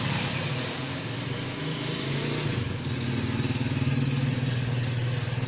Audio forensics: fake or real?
real